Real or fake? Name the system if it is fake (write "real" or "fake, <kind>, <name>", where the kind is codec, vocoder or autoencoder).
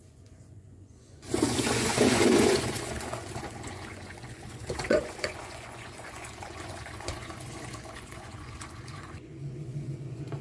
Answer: fake, vocoder, Vocos